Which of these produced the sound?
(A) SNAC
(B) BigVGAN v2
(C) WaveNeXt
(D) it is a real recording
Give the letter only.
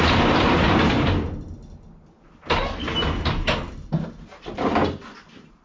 D